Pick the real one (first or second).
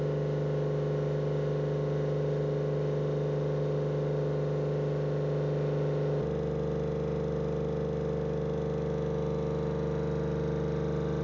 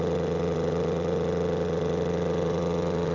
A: first